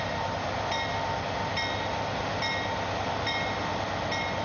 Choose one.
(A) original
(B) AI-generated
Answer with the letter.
A